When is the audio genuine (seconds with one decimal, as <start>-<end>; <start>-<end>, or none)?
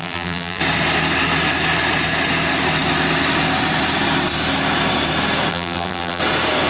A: 0.6-5.5; 6.2-6.7